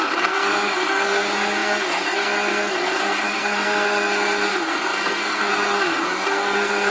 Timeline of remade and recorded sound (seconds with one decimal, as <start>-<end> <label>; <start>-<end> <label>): 0.0-6.9 remade